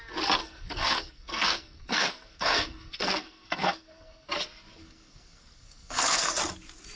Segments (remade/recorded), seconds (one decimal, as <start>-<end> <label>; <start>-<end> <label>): 0.0-0.4 recorded; 0.4-4.3 remade; 4.3-4.8 recorded; 4.8-6.4 remade; 6.4-7.0 recorded